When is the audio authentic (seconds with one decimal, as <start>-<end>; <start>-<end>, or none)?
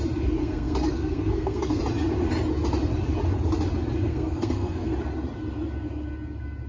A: 0.0-0.4; 1.8-4.1; 4.9-6.7